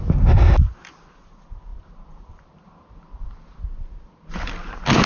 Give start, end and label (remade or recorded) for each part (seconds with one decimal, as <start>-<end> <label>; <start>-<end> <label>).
0.0-5.1 recorded